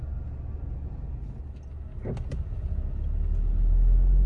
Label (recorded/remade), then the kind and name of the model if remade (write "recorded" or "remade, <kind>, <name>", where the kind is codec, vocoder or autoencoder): recorded